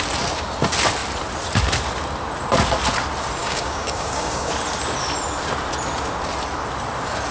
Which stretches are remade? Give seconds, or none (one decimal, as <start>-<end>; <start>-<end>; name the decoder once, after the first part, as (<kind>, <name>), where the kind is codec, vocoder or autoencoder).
3.4-4.5 (codec, DAC)